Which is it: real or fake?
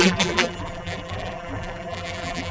fake